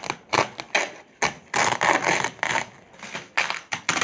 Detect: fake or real real